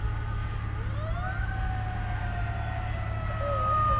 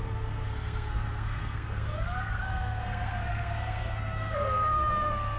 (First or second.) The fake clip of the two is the second